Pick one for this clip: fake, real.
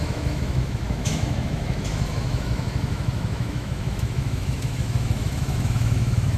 fake